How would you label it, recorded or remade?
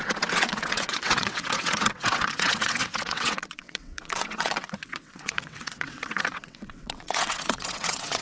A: remade